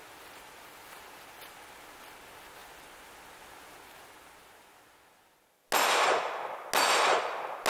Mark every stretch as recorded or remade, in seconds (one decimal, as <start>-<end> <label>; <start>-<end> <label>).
0.0-7.7 recorded